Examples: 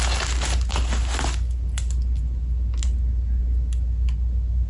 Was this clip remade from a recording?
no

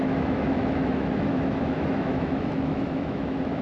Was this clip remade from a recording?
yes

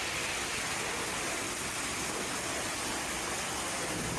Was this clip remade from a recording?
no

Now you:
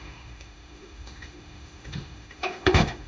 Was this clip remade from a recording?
yes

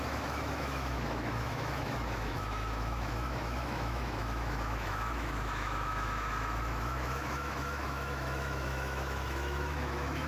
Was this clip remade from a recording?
yes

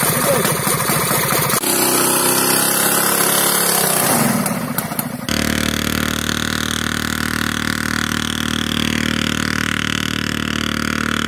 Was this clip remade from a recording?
no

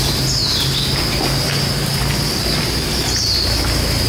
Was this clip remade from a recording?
no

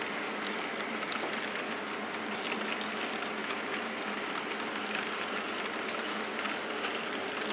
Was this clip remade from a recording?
no